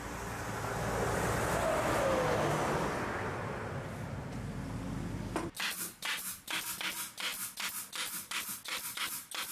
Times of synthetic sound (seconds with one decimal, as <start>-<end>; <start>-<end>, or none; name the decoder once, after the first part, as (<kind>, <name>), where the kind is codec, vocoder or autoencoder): none